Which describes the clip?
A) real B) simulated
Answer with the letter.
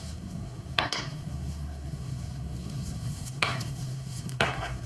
B